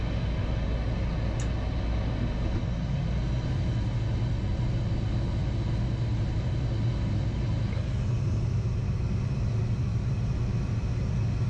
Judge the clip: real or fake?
real